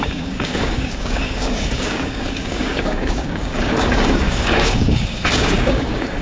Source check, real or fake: fake